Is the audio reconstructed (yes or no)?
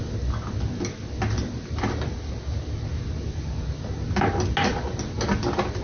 no